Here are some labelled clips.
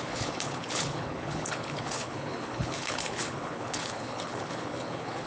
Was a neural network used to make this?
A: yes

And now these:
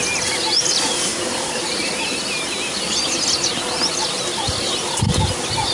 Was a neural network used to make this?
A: no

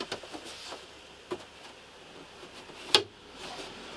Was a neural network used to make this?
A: no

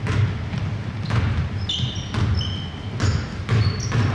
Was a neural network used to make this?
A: no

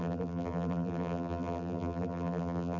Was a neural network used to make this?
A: yes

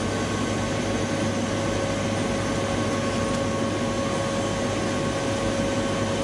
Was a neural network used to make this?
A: no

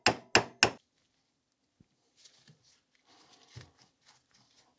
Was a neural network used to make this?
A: no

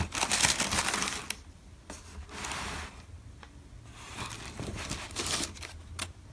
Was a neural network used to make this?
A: no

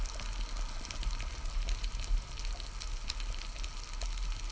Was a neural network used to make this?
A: no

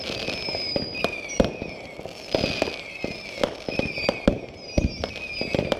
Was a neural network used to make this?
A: no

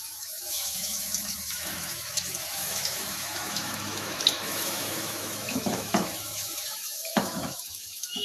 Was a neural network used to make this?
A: yes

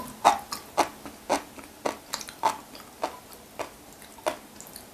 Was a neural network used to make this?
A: no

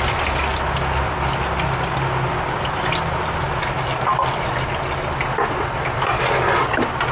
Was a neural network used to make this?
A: no